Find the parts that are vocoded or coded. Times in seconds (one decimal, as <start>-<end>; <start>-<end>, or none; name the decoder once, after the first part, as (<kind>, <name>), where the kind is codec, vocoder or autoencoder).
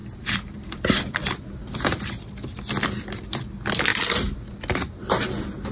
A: 0.0-3.4 (vocoder, BigVGAN v2); 3.9-4.6